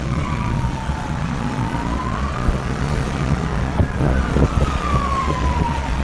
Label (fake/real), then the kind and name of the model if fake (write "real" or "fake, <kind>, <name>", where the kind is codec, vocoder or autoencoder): fake, vocoder, Vocos